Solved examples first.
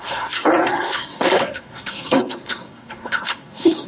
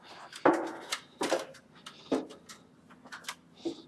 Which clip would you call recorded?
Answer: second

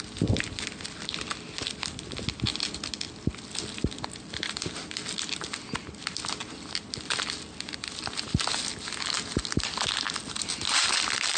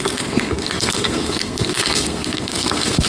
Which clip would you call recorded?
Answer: first